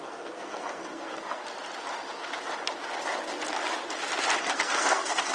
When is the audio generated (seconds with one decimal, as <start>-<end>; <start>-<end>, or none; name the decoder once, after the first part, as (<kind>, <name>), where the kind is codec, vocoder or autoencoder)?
0.0-1.4 (codec, SNAC); 4.4-5.3